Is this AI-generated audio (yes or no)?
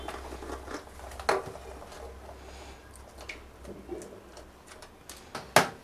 no